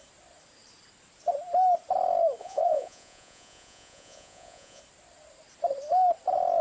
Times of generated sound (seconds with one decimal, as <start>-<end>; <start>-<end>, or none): 2.4-4.8